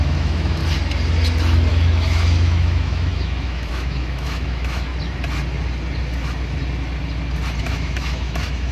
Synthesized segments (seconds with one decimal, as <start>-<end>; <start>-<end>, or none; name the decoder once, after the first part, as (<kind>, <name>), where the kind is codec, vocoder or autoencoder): 0.0-0.6 (autoencoder, DAC-VAE); 1.7-4.9; 7.6-8.7